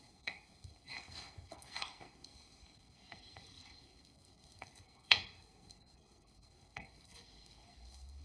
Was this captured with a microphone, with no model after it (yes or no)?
no